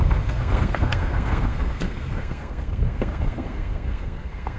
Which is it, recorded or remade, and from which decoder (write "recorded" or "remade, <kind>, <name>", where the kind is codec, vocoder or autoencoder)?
remade, codec, SNAC